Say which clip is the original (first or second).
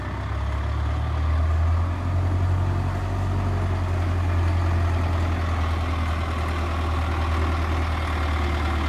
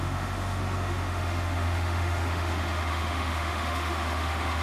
first